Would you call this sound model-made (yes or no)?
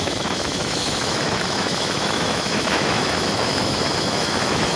yes